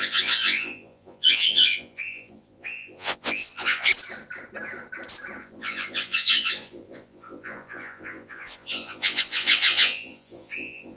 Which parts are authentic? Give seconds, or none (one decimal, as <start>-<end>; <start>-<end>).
3.9-5.4